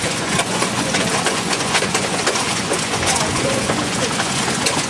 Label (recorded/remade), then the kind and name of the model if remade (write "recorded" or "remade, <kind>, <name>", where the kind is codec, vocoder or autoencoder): remade, vocoder, Vocos